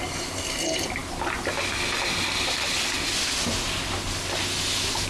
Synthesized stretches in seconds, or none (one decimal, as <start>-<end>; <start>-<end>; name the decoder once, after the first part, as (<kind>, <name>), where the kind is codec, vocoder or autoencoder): none

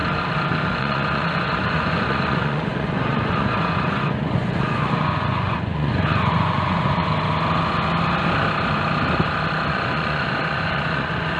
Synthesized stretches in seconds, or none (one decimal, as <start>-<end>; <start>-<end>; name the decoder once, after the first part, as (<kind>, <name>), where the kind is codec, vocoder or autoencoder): 0.8-7.0 (vocoder, Vocos); 9.7-11.4

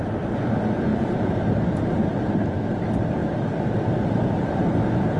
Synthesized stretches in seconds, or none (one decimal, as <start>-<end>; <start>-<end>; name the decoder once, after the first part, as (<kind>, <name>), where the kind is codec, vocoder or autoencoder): 0.9-2.5 (vocoder, BigVGAN v2); 3.2-4.7